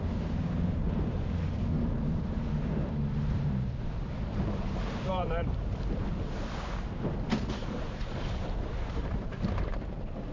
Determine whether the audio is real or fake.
fake